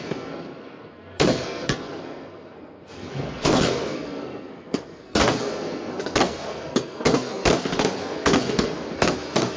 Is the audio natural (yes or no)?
no